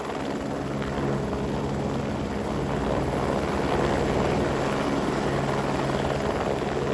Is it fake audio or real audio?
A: real